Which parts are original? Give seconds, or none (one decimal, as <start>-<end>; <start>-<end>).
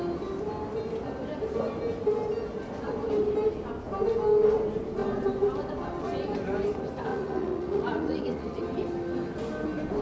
0.0-7.1; 8.6-10.0